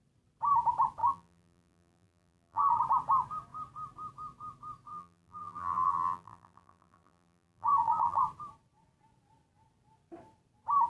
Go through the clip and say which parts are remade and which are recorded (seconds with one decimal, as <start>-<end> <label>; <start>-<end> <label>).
0.0-1.0 recorded; 1.0-2.8 remade; 2.8-4.9 recorded; 4.9-8.2 remade; 8.2-10.9 recorded